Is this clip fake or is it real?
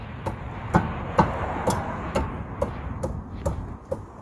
real